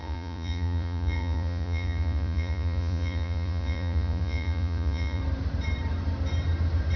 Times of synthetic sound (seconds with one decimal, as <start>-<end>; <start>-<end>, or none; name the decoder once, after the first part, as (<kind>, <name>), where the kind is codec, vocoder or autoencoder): 0.0-5.2 (vocoder, Vocos)